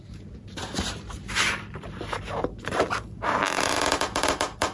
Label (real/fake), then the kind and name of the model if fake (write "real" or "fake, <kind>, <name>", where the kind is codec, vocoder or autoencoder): fake, vocoder, BigVGAN v2